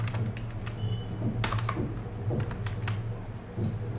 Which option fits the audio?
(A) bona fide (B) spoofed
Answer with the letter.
A